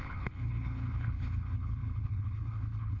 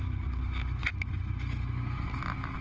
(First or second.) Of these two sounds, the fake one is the first